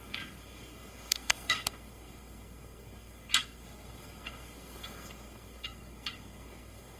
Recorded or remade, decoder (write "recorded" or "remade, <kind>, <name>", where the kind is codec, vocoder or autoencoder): remade, codec, SNAC